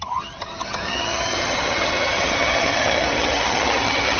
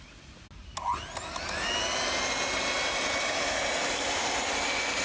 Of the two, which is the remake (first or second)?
first